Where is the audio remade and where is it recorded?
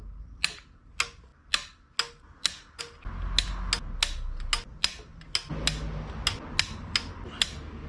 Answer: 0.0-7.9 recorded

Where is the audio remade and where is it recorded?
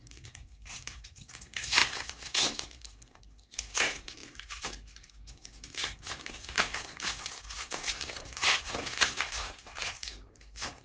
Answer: 0.0-10.8 remade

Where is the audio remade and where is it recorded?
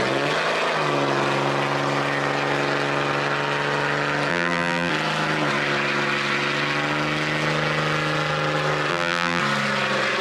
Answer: 0.0-4.3 recorded; 4.3-4.9 remade; 4.9-8.9 recorded; 8.9-9.4 remade; 9.4-10.2 recorded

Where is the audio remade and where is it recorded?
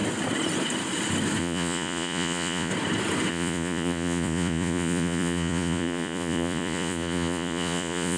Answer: 0.0-1.4 recorded; 1.4-2.7 remade; 2.7-3.3 recorded; 3.3-8.2 remade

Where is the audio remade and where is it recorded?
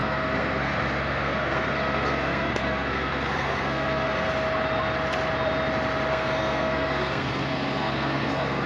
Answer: 0.0-4.3 remade; 4.3-6.1 recorded; 6.1-8.7 remade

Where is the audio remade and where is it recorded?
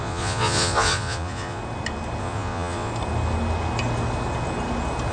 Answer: 0.0-1.6 remade; 1.6-2.2 recorded; 2.2-2.9 remade; 2.9-5.1 recorded